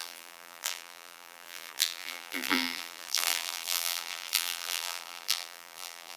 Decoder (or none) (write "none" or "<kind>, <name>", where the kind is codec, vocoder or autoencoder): vocoder, BigVGAN v2